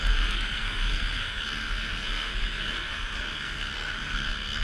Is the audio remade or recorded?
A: remade